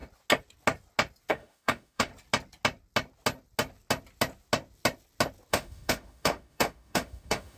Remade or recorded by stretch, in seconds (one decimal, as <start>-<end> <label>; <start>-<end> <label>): 0.0-1.3 recorded; 1.3-2.1 remade; 2.1-5.5 recorded; 5.5-7.6 remade